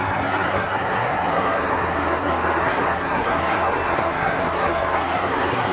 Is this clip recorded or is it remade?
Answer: remade